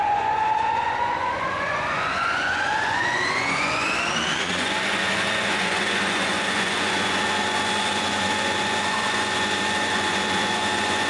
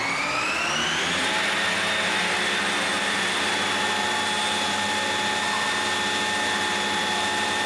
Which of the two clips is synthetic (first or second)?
first